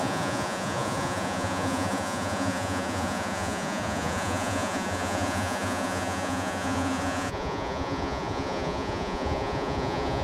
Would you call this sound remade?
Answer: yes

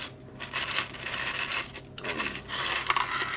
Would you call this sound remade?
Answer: no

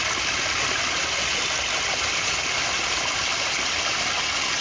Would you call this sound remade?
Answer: no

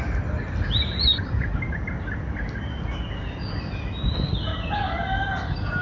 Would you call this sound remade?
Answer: no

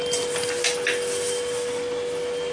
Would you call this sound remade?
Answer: no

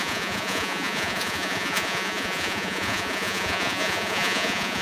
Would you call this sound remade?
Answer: yes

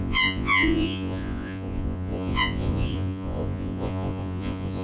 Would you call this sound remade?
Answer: yes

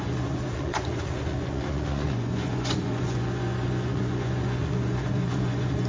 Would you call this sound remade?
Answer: yes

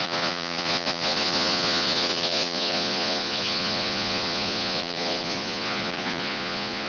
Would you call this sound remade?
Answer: yes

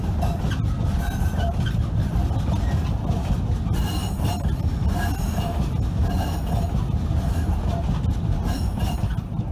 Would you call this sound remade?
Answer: no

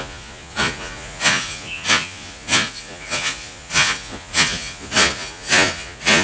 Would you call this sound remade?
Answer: yes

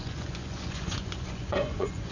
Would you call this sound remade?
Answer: yes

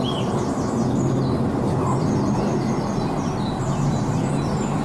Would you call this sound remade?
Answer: no